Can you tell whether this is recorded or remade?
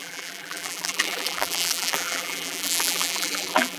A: remade